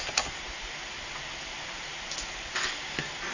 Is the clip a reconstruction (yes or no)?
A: no